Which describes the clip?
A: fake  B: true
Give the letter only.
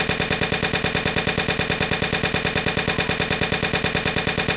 B